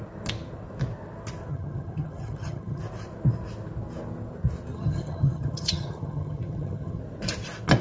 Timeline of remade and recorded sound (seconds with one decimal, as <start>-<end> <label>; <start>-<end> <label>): 0.0-1.5 recorded; 1.5-2.8 remade; 2.8-4.7 recorded; 4.7-7.0 remade; 7.0-7.8 recorded

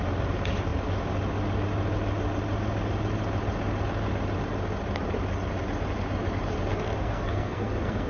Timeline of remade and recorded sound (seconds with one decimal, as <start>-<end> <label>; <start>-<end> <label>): 0.0-6.7 recorded; 6.7-8.1 remade

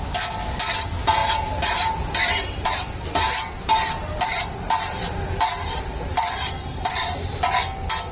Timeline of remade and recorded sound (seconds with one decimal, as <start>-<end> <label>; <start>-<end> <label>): 0.0-1.2 recorded; 1.2-5.1 remade; 5.1-5.6 recorded; 5.6-7.4 remade; 7.4-8.1 recorded

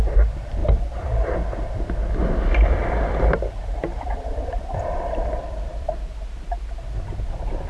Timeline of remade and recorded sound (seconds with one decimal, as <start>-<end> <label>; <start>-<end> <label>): 0.0-0.6 recorded; 0.6-1.2 remade; 1.2-2.8 recorded; 2.8-5.9 remade; 5.9-7.7 recorded